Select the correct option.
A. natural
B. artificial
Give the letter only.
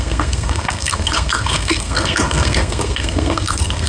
B